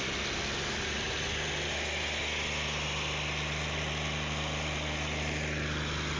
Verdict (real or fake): real